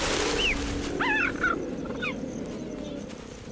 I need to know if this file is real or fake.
real